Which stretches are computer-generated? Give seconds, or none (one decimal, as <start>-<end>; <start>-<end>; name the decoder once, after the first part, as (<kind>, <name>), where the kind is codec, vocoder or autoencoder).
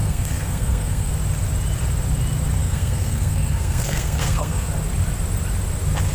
0.0-1.1 (codec, SNAC); 2.6-4.7